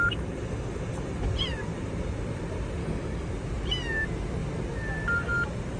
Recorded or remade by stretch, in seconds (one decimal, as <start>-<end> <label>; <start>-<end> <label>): 0.0-2.8 recorded; 2.8-3.3 remade; 3.3-5.8 recorded